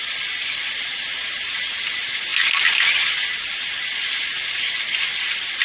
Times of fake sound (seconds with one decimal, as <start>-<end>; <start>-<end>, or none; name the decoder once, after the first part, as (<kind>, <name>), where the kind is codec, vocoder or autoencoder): none